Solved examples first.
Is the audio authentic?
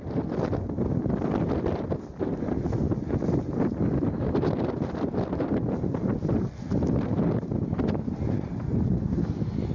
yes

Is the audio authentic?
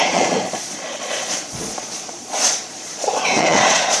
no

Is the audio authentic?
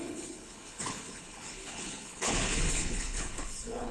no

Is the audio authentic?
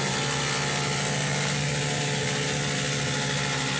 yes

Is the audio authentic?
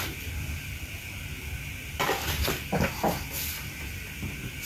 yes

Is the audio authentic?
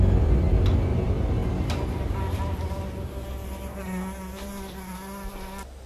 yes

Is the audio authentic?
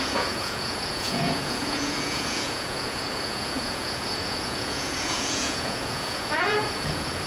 no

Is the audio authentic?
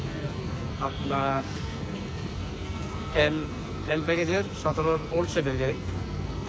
no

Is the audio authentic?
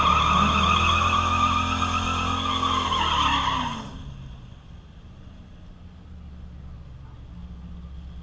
yes